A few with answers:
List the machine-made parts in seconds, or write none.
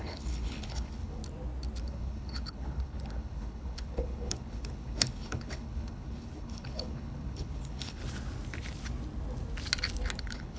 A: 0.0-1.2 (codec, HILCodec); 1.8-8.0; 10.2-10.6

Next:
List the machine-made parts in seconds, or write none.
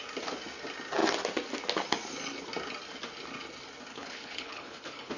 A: 3.9-5.2 (codec, HILCodec)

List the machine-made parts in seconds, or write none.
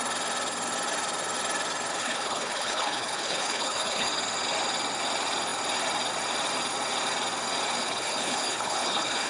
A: 1.9-4.1 (codec, HILCodec); 7.8-9.3